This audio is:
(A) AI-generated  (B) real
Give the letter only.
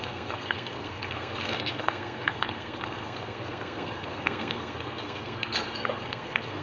A